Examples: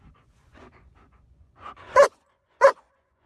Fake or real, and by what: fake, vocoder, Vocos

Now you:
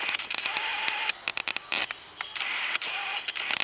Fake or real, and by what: real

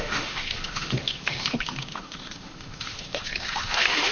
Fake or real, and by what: fake, autoencoder, DAC-VAE